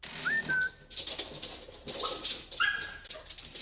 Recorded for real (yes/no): yes